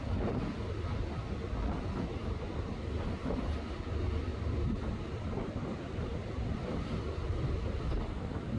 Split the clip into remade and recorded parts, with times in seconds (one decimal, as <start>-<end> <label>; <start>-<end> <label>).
0.0-4.3 recorded; 4.3-7.9 remade; 7.9-8.6 recorded